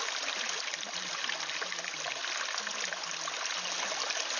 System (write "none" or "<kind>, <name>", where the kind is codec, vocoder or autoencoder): none